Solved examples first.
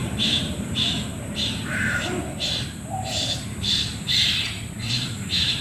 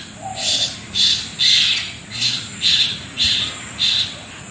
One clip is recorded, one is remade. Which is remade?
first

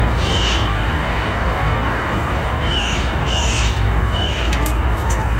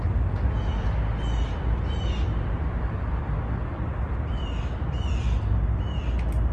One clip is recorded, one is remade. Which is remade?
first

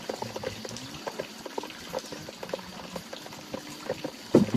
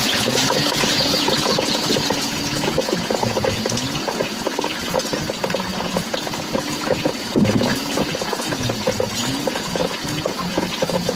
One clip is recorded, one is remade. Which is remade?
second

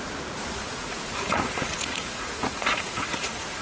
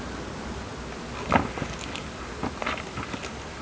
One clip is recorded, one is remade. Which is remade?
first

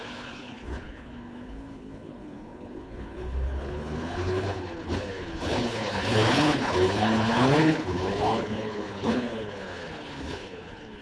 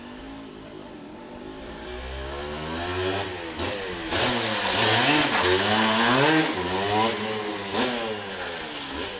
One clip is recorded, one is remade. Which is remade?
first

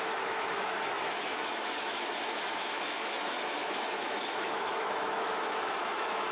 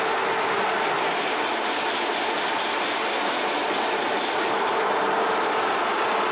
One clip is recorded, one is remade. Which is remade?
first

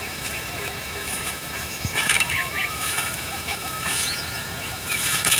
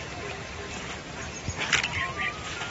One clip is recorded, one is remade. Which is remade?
first